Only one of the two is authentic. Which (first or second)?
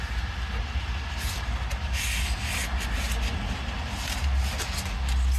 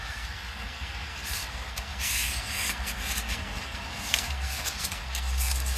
first